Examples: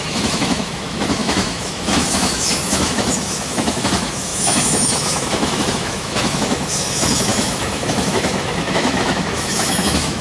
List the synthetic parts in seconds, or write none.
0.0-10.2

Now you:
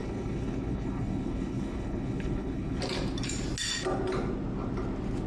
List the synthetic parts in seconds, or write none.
0.0-2.8

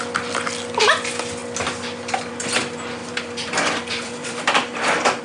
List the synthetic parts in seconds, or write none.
3.0-5.2

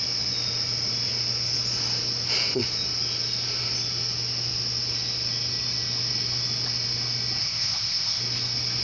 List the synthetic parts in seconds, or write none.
7.4-8.2

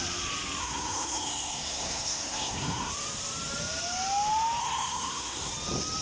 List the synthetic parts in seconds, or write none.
0.6-2.9; 4.6-5.5

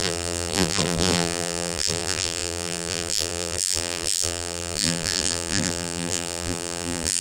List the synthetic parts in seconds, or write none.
0.0-7.2

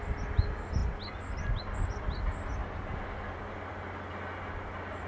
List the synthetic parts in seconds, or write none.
none